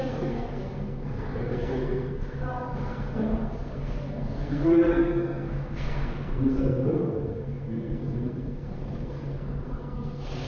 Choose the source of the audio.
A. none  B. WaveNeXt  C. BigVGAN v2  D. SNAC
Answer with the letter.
D